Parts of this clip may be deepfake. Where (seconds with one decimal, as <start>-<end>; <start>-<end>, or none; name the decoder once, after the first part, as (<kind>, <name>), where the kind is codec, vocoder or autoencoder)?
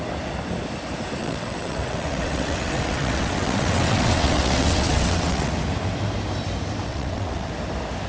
1.2-5.5 (vocoder, WaveNeXt); 6.9-7.5